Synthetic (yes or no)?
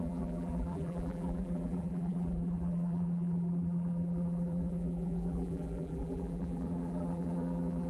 yes